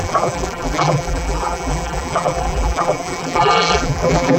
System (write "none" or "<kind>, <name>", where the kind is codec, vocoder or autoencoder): vocoder, BigVGAN v2